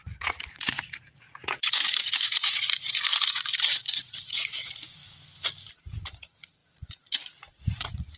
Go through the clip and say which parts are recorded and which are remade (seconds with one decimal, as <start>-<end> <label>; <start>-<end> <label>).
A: 0.0-5.0 remade; 5.0-5.8 recorded; 5.8-8.2 remade